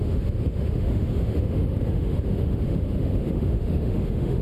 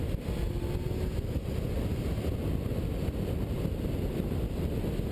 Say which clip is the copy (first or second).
first